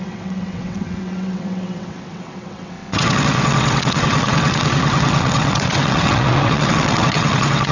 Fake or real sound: fake